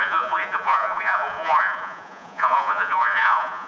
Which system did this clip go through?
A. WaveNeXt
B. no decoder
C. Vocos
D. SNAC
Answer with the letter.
C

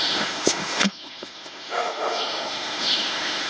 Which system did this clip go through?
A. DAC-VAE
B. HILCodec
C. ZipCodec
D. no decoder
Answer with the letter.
A